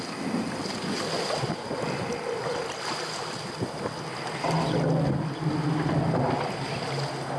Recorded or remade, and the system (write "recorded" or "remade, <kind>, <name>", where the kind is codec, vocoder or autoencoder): recorded